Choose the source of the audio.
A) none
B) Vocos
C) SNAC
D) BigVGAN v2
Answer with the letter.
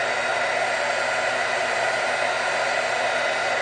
A